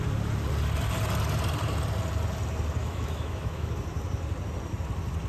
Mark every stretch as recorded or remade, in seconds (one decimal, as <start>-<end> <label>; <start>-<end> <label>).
0.0-2.8 recorded; 2.8-3.7 remade; 3.7-5.3 recorded